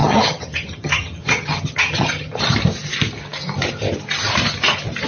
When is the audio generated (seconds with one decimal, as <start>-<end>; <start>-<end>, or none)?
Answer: 0.0-2.4